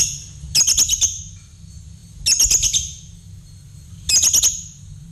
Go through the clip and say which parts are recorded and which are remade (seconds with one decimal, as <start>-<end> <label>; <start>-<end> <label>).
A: 0.0-5.1 recorded

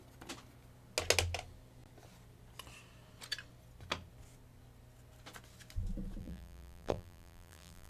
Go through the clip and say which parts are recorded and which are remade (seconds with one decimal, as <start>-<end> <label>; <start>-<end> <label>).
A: 0.0-6.2 recorded; 6.2-7.9 remade